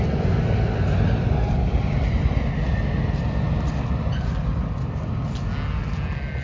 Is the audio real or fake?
real